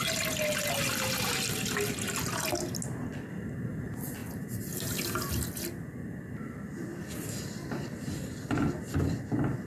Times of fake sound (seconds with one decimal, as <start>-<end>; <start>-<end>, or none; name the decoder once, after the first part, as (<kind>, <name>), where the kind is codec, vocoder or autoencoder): none